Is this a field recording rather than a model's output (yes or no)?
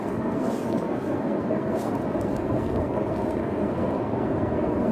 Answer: no